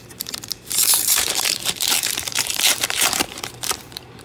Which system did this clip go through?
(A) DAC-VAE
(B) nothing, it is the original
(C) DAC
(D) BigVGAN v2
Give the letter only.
D